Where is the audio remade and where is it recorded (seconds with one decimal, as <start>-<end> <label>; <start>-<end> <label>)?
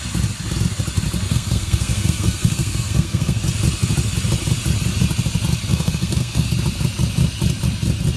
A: 0.0-1.3 recorded; 1.3-3.4 remade; 3.4-5.7 recorded; 5.7-6.5 remade; 6.5-8.2 recorded